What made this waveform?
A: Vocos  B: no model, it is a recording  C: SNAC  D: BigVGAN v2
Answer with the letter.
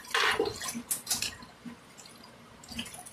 B